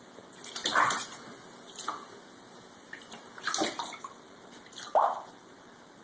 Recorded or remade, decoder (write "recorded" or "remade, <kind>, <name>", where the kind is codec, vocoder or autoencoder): recorded